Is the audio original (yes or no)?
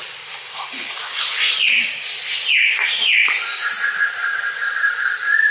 yes